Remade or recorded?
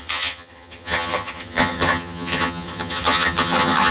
remade